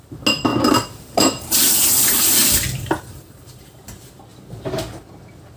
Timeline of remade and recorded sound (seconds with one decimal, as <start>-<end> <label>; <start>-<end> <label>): 0.0-0.5 recorded; 0.5-1.7 remade; 1.7-2.4 recorded; 2.4-3.8 remade; 3.8-5.6 recorded